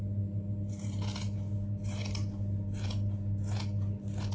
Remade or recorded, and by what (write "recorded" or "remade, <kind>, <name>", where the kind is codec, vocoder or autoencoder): recorded